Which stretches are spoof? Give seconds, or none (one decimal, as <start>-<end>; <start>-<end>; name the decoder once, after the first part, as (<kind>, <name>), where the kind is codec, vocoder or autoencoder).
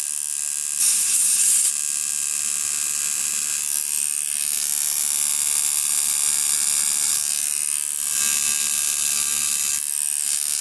0.8-1.7 (codec, SNAC)